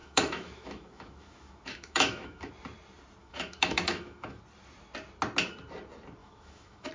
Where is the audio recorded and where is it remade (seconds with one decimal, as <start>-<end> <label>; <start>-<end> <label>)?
0.0-2.5 remade; 2.5-3.2 recorded; 3.2-4.4 remade; 4.4-6.2 recorded; 6.2-6.9 remade